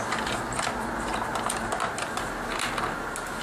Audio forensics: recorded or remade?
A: recorded